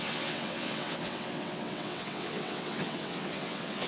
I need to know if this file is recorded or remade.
remade